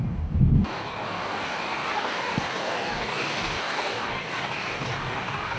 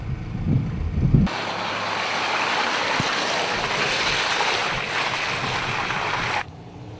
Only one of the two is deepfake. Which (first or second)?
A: first